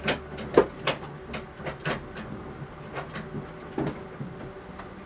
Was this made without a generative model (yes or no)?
yes